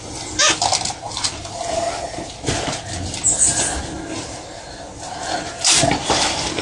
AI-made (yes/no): no